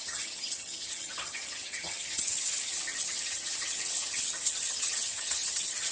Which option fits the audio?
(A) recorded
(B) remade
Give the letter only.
B